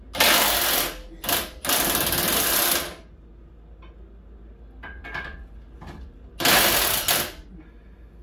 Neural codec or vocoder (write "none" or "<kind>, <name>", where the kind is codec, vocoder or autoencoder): none